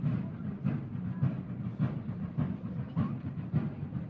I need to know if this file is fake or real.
real